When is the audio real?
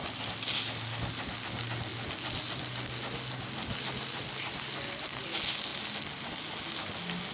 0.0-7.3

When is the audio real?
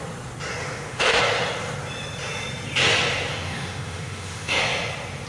0.0-0.6; 1.2-3.3; 4.6-5.3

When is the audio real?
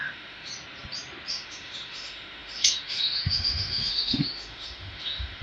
0.5-1.3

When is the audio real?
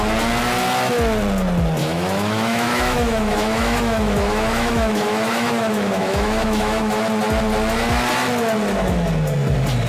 0.0-1.8; 7.0-9.9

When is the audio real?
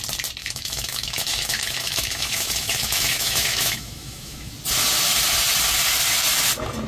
0.0-0.4; 4.5-6.9